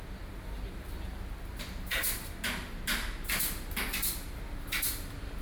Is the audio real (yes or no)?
yes